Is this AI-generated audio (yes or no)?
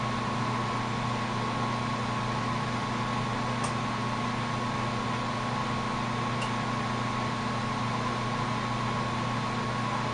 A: no